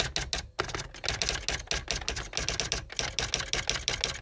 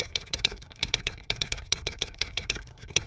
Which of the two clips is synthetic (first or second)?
second